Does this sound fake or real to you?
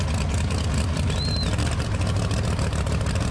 real